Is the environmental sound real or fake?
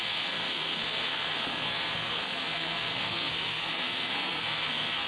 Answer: fake